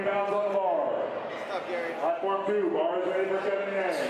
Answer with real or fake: real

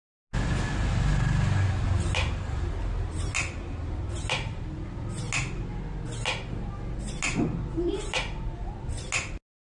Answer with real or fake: real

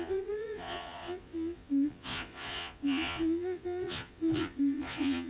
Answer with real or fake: fake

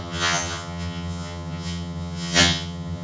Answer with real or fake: fake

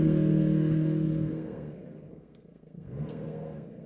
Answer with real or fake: fake